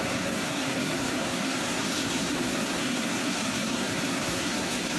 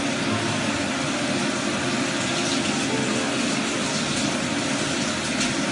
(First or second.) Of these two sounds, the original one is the second